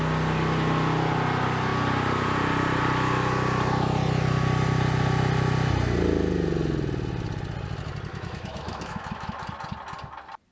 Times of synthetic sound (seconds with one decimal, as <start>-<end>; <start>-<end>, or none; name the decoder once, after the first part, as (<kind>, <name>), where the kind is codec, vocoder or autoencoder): 8.1-9.5 (autoencoder, DAC-VAE)